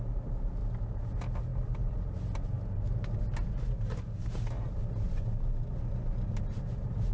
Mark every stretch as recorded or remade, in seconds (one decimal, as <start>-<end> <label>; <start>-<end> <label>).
0.0-7.1 recorded